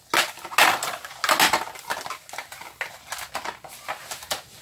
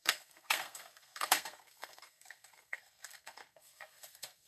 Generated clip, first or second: second